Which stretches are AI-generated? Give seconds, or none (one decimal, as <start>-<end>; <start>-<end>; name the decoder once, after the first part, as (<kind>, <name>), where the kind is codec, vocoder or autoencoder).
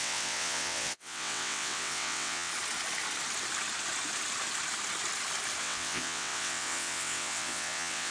0.0-2.5 (vocoder, WaveNeXt); 5.6-8.1